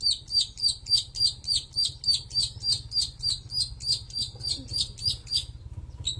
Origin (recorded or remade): recorded